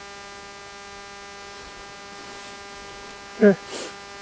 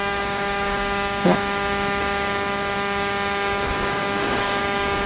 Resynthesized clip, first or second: second